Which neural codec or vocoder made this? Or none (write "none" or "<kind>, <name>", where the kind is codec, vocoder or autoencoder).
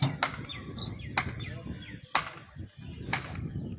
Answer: none